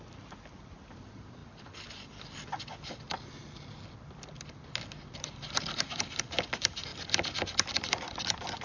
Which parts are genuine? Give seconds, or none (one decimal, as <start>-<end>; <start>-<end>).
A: 1.4-5.1; 6.9-7.7